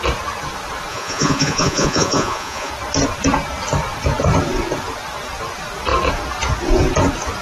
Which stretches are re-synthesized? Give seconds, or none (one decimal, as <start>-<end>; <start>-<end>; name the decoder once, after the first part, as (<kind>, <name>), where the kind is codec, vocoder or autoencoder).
0.9-2.7 (vocoder, Vocos)